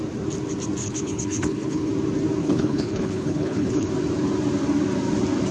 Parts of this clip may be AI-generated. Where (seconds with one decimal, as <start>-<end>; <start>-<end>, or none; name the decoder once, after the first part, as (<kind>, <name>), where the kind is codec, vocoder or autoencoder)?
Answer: 0.8-1.9 (codec, HILCodec); 2.4-3.9